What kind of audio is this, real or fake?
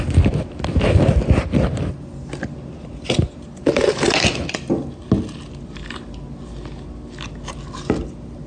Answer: real